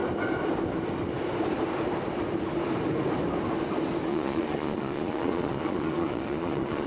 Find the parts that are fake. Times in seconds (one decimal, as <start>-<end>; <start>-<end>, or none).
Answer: 4.1-6.9